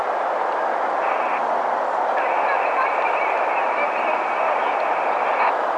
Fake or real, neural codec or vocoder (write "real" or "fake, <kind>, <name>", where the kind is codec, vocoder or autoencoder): real